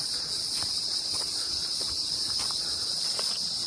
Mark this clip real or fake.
fake